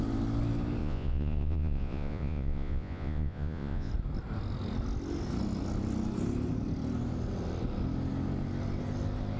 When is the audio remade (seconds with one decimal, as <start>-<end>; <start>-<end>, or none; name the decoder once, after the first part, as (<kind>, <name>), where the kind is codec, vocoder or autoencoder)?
0.8-3.9 (vocoder, Vocos)